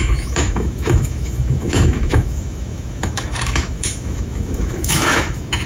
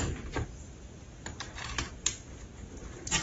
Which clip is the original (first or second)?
second